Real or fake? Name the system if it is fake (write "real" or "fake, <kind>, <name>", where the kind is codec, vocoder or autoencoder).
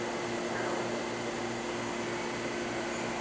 real